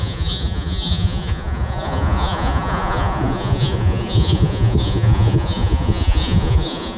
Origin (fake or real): fake